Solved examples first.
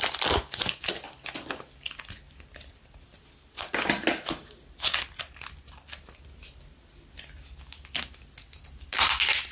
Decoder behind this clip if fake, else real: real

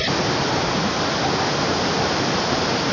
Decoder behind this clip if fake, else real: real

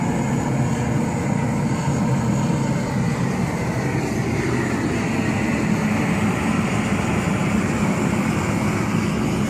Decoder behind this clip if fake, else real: real